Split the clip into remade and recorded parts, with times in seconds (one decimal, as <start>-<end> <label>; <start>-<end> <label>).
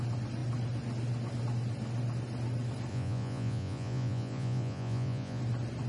0.0-2.9 recorded; 2.9-5.4 remade; 5.4-5.9 recorded